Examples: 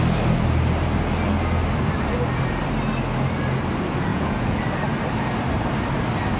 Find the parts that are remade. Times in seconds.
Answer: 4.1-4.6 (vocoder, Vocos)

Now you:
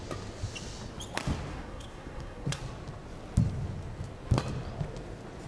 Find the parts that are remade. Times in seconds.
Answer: 1.5-2.6 (codec, SNAC)

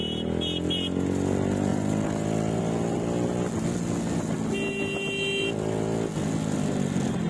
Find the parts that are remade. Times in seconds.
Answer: none

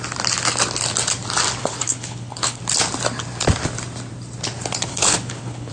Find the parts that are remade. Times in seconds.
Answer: 1.6-2.6 (codec, HILCodec); 4.9-5.7

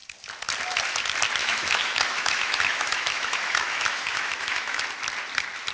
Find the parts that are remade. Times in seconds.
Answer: 1.4-4.8 (autoencoder, DAC-VAE)

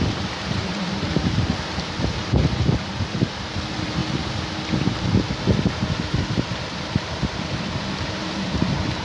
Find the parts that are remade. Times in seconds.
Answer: 0.0-4.0 (vocoder, BigVGAN v2); 5.8-9.0